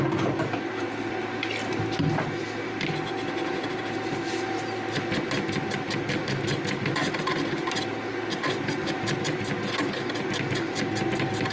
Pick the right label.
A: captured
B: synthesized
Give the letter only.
A